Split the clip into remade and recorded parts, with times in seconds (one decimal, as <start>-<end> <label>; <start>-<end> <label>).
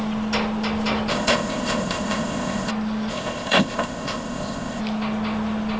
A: 0.0-1.1 recorded; 1.1-2.7 remade; 2.7-3.1 recorded; 3.1-4.8 remade; 4.8-5.8 recorded